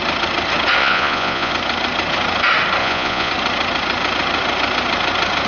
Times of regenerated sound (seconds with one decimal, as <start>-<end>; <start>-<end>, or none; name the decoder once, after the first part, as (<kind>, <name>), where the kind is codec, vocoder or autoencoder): 0.8-1.5 (vocoder, Vocos); 2.8-3.3